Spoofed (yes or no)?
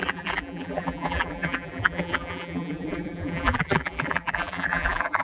yes